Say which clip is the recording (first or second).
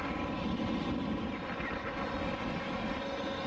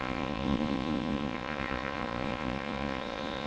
first